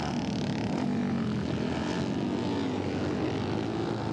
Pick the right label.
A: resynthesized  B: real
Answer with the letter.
B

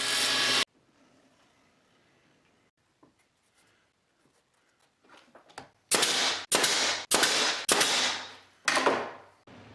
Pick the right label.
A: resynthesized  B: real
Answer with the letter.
B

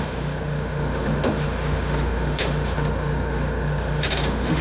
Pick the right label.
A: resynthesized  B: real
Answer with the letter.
A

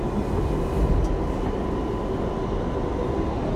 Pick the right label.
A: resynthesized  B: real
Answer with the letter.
B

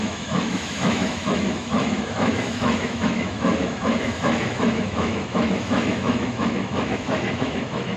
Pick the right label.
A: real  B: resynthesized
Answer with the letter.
B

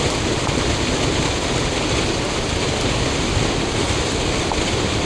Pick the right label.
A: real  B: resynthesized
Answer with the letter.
A